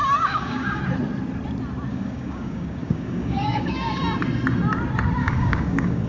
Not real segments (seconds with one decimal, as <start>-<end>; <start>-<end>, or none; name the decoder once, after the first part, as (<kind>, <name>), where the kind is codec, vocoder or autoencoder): 0.0-0.8 (codec, DAC); 1.9-4.0; 5.2-6.1